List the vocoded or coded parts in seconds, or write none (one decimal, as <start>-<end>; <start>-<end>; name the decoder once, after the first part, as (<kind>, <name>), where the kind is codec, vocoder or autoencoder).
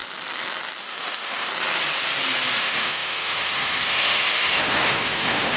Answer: 0.8-1.5 (autoencoder, DAC-VAE); 2.6-5.6